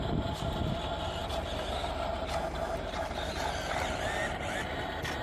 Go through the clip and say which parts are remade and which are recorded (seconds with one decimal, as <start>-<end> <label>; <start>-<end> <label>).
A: 0.0-5.2 recorded